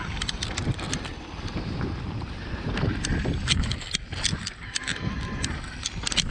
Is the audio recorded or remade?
remade